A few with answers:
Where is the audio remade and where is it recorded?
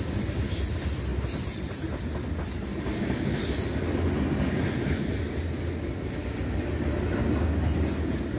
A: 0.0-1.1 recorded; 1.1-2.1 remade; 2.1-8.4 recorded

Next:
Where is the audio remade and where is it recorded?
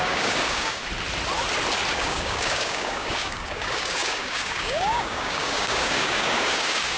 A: 0.0-0.8 remade; 0.8-1.9 recorded; 1.9-7.0 remade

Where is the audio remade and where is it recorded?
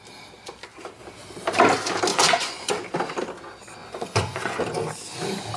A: 0.0-2.1 recorded; 2.1-2.7 remade; 2.7-3.8 recorded; 3.8-4.6 remade; 4.6-5.6 recorded